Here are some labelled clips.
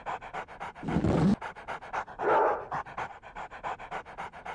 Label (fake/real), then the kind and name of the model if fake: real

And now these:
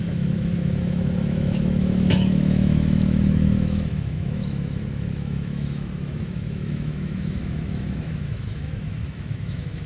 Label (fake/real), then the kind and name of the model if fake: fake, autoencoder, DAC-VAE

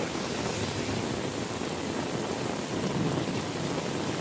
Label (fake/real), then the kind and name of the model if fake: real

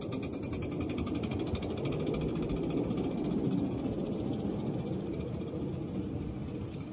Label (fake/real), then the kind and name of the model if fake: real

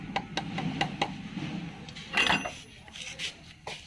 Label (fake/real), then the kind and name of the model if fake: real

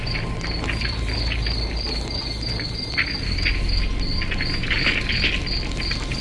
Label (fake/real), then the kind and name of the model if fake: real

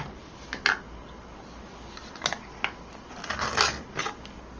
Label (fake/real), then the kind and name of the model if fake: real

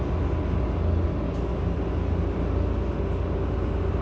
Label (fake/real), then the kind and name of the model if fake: real